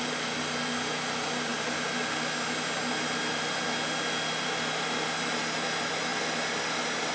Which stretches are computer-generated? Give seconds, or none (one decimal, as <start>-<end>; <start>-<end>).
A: none